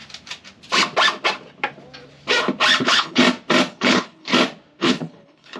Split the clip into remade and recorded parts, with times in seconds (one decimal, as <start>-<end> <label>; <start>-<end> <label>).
0.0-2.8 recorded; 2.8-3.2 remade; 3.2-3.7 recorded; 3.7-4.3 remade; 4.3-4.8 recorded; 4.8-5.6 remade